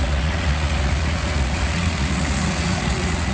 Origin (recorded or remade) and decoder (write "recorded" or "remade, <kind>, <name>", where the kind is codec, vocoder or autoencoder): remade, vocoder, Vocos